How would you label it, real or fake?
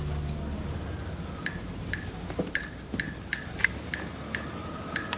real